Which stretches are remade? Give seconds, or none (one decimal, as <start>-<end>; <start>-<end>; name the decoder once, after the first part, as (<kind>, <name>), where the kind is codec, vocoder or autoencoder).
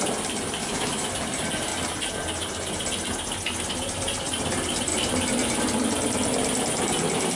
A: 0.6-1.1 (autoencoder, DAC-VAE)